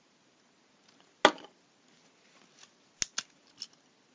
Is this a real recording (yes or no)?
yes